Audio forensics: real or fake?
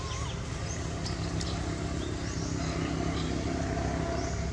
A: real